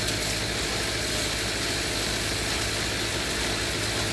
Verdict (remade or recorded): recorded